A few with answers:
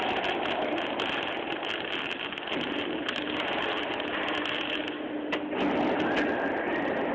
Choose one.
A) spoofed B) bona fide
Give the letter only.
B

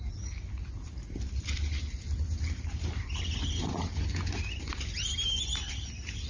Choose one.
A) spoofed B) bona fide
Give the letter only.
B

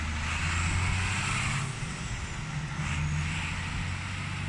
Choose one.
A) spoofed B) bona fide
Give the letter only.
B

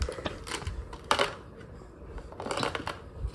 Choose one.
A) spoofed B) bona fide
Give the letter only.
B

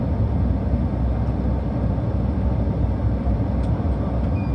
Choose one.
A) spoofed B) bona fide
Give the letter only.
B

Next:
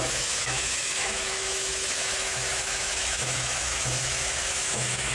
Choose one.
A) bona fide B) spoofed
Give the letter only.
B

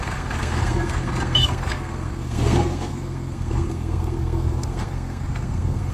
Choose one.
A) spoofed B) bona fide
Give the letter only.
A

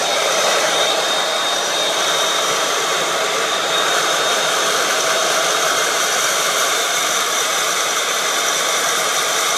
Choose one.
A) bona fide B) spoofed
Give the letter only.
B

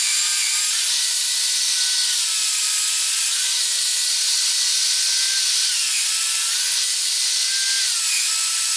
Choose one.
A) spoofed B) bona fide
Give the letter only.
B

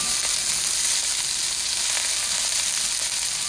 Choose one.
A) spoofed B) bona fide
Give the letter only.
B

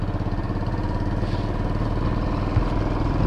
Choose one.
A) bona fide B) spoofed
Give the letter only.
A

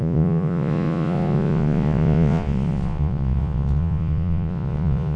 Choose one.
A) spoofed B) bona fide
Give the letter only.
A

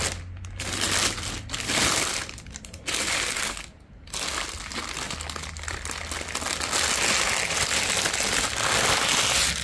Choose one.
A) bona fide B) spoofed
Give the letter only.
A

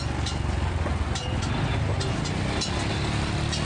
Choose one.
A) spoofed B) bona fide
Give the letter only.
B